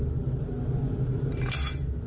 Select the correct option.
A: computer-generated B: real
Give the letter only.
B